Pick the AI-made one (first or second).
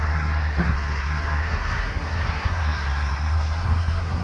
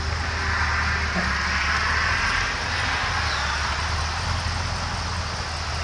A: first